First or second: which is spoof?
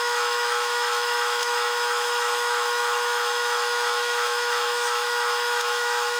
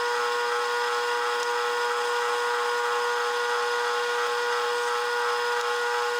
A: first